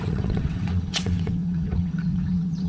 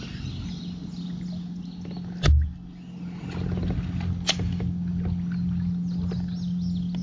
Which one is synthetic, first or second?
first